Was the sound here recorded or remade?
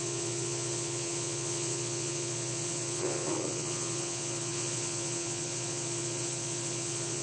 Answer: remade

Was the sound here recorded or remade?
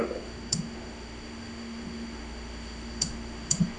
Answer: remade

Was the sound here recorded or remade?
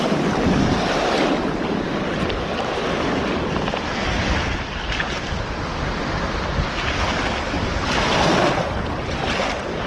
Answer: recorded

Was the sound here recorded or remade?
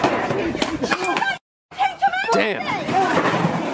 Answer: recorded